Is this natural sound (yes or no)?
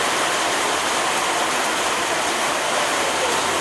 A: yes